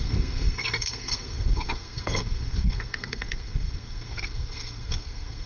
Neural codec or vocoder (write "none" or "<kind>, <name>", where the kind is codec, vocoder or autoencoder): codec, SNAC